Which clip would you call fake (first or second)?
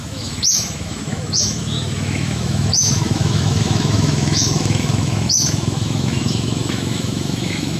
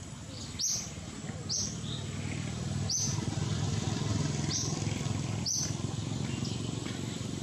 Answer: first